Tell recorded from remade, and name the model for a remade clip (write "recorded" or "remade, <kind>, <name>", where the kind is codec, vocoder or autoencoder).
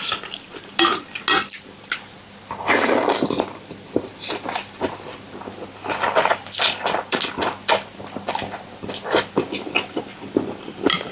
recorded